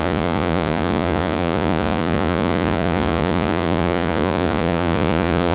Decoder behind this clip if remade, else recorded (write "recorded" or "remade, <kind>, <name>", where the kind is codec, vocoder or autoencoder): remade, vocoder, Vocos